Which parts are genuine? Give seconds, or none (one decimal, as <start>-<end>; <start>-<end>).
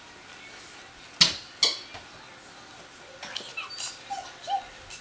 0.0-5.0